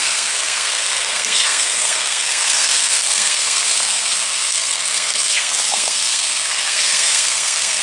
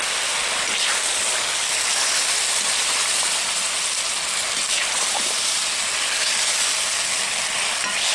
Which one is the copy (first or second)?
first